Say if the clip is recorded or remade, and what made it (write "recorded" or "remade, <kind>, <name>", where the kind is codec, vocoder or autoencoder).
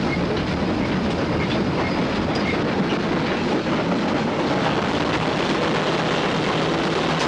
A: recorded